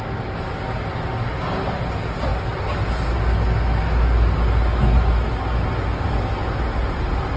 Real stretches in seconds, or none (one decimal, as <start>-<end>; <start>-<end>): 0.0-7.4